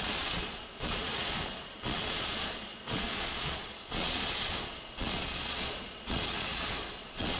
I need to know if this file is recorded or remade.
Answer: remade